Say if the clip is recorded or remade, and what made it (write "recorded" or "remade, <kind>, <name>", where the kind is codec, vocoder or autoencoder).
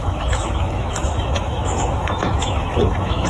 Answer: remade, autoencoder, DAC-VAE